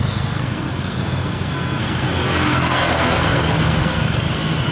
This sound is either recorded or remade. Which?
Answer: remade